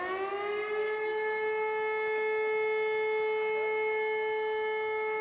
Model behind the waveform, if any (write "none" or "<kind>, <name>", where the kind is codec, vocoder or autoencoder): none